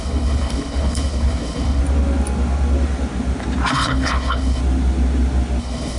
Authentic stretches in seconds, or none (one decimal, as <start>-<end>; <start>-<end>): 1.8-3.7; 4.6-5.6